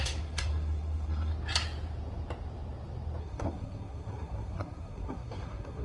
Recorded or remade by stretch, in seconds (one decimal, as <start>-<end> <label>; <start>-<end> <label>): 0.0-1.3 remade; 1.3-3.2 recorded; 3.2-5.8 remade